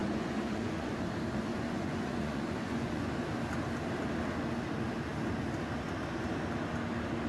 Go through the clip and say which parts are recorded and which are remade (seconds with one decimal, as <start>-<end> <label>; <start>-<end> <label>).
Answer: 0.0-0.9 remade; 0.9-1.5 recorded; 1.5-3.1 remade; 3.1-7.3 recorded